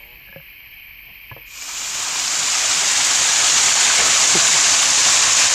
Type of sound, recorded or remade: recorded